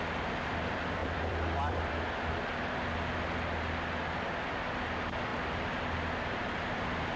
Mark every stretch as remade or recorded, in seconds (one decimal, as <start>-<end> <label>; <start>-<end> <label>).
0.0-1.0 recorded; 1.0-2.9 remade; 2.9-7.2 recorded